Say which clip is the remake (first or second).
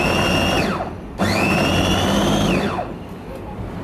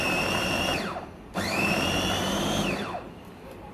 second